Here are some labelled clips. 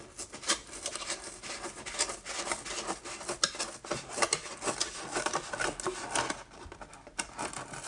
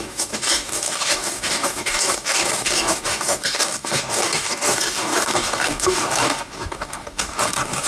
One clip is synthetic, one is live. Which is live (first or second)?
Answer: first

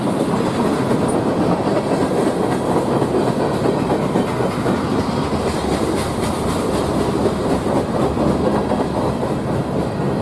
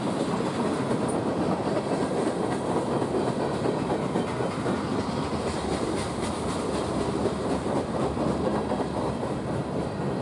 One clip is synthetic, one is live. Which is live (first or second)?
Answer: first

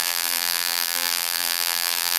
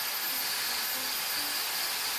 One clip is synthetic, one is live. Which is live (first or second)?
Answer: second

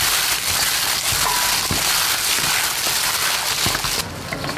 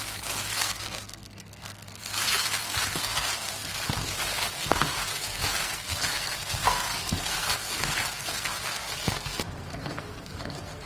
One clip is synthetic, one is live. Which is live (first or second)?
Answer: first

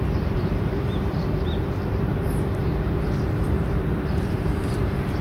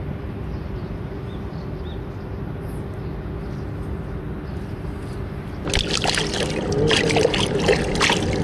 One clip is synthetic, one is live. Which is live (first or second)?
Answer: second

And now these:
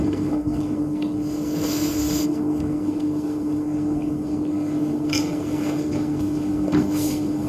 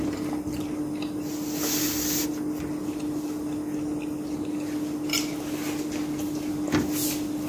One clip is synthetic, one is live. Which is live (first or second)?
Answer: second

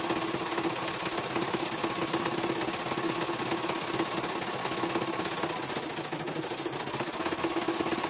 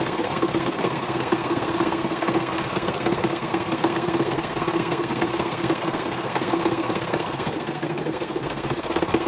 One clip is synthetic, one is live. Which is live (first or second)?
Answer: first